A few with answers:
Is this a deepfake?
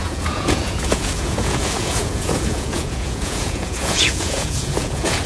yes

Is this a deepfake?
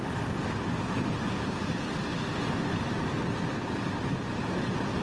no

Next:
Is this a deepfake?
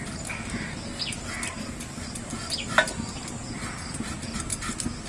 no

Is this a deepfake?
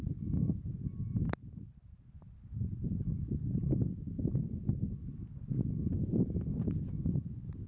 no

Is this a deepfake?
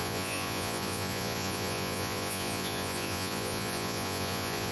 yes